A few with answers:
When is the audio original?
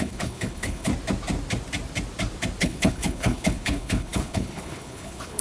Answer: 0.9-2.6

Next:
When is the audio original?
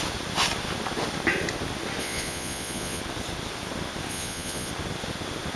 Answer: 0.0-2.0; 3.0-4.1; 4.7-5.6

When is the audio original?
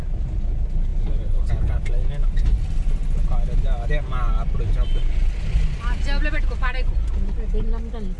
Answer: 0.0-8.2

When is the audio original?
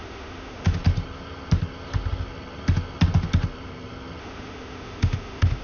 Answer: 0.8-4.2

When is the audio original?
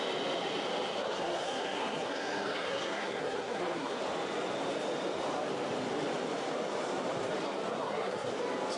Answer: 0.0-1.0; 4.0-7.7; 8.3-8.8